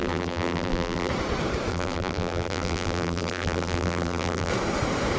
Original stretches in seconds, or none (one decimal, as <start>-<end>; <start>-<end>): 1.1-1.7; 4.5-5.2

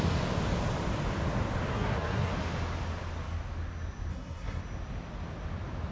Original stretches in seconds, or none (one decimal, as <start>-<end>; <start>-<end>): 0.0-1.7; 2.3-4.1; 4.6-5.9